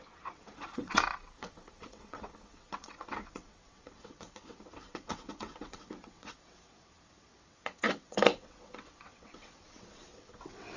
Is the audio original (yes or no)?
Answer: no